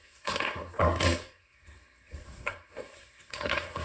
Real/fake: fake